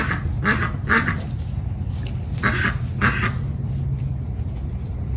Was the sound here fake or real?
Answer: real